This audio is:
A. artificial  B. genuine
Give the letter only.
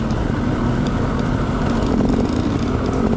B